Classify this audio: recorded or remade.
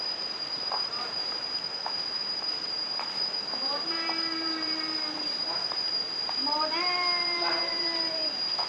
remade